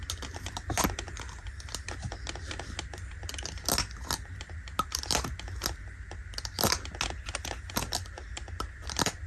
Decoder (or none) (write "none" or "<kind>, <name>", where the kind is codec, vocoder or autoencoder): none